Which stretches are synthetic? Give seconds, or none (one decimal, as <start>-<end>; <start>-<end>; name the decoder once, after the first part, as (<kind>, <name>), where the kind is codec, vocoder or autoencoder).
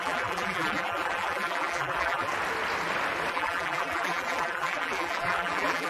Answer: 0.0-2.3 (vocoder, BigVGAN v2); 3.3-5.9